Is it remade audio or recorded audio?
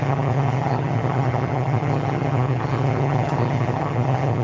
remade